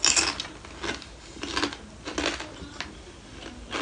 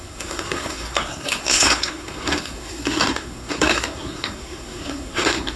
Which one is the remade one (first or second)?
second